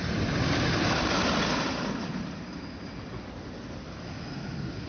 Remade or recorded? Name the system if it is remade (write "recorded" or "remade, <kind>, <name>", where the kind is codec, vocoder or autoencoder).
recorded